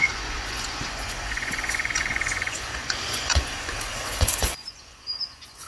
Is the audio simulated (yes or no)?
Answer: yes